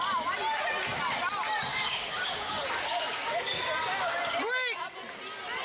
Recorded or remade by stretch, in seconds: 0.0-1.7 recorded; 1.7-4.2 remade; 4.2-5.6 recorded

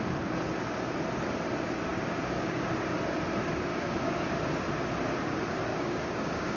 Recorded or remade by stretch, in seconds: 0.0-1.9 recorded; 1.9-2.7 remade; 2.7-3.7 recorded; 3.7-4.3 remade; 4.3-5.7 recorded; 5.7-6.6 remade

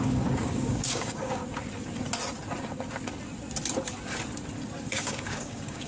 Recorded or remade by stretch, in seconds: 0.0-1.4 remade; 1.4-4.9 recorded; 4.9-5.9 remade

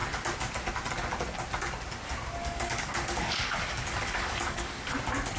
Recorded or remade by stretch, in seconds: 0.0-2.4 recorded; 2.4-4.9 remade; 4.9-5.4 recorded

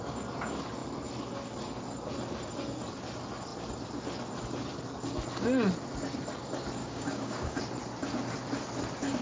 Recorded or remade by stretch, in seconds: 0.0-6.8 recorded; 6.8-7.6 remade; 7.6-9.2 recorded

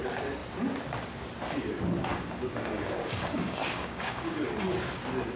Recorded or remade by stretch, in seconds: 0.0-2.1 recorded; 2.1-4.5 remade; 4.5-5.4 recorded

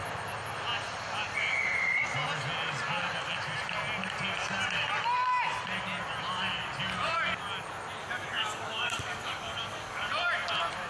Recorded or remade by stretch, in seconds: 0.0-8.0 recorded; 8.0-10.1 remade; 10.1-10.9 recorded

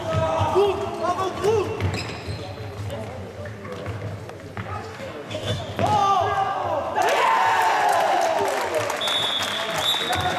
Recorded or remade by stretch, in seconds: 0.0-4.9 recorded; 4.9-5.6 remade; 5.6-10.4 recorded